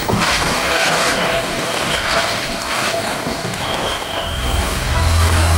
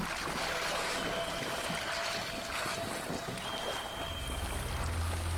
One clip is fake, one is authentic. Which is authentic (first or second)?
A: second